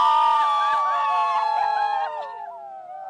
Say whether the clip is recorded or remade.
recorded